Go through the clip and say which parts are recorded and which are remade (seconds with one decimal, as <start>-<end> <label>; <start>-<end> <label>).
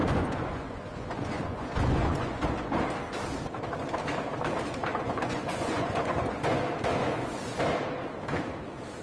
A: 0.0-2.7 remade; 2.7-4.9 recorded; 4.9-6.6 remade; 6.6-7.0 recorded; 7.0-7.6 remade; 7.6-9.0 recorded